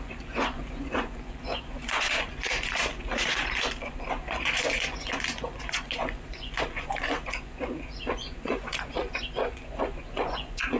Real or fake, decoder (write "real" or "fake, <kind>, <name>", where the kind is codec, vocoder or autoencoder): fake, vocoder, Vocos